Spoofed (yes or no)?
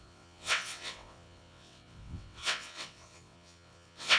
yes